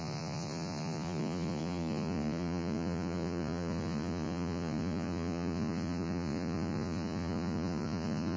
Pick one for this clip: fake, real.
fake